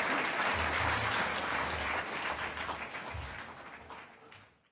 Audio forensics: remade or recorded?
recorded